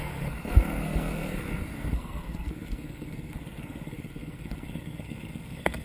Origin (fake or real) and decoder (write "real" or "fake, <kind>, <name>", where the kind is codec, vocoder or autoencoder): fake, codec, SNAC